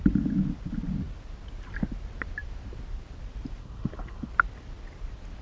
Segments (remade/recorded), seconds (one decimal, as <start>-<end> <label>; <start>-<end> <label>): 0.0-3.6 recorded; 3.6-4.3 remade; 4.3-5.4 recorded